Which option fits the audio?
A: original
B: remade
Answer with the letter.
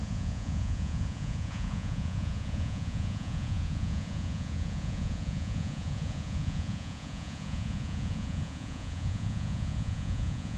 B